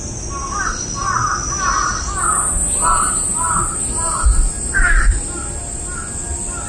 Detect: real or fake real